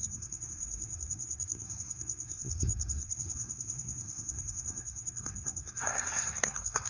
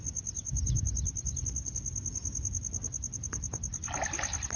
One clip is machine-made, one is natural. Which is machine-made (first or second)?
first